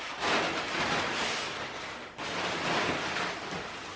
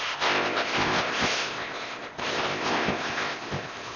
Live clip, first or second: first